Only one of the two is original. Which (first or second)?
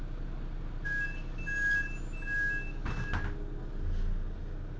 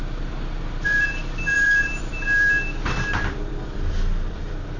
first